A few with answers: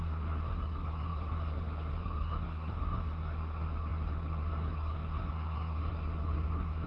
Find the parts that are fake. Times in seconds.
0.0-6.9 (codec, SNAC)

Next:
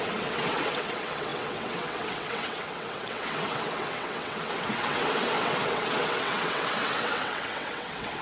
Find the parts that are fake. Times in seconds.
0.0-8.2 (vocoder, WaveNeXt)